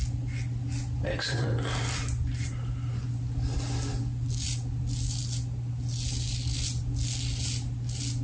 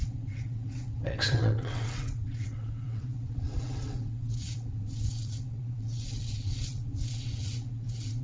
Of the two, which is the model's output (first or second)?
second